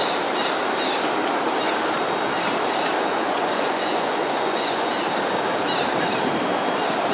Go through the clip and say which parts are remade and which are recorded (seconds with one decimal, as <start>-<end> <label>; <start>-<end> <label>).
0.0-3.1 recorded; 3.1-4.9 remade; 4.9-7.1 recorded